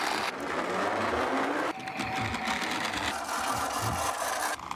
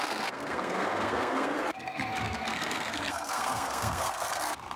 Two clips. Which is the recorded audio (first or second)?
first